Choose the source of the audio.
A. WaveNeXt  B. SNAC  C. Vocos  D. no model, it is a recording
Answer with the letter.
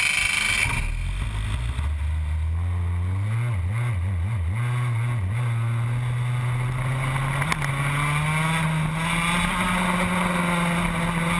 D